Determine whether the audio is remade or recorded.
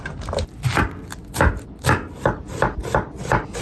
recorded